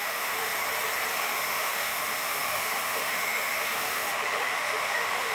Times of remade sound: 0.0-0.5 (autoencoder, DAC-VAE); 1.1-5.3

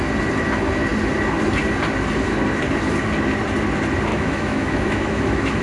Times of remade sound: 4.1-5.6 (autoencoder, DAC-VAE)

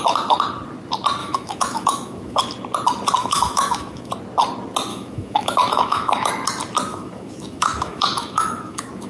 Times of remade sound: 1.2-2.4 (autoencoder, DAC-VAE); 3.2-4.1; 4.9-6.3; 6.9-9.1

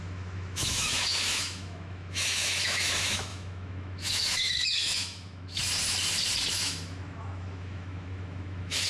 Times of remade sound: 0.0-5.6 (autoencoder, DAC-VAE); 6.5-8.9